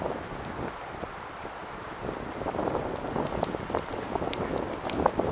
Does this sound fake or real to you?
real